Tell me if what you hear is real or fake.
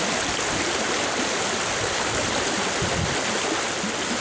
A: real